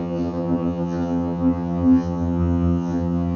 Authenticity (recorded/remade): remade